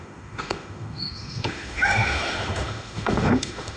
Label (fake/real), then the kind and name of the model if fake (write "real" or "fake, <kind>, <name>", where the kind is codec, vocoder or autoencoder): fake, autoencoder, DAC-VAE